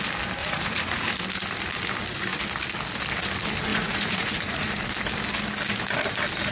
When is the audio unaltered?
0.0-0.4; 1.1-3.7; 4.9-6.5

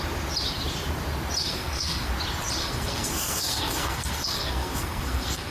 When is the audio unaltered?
0.0-1.4; 2.1-2.6